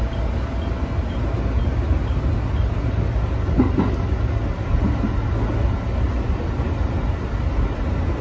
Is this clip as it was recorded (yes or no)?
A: yes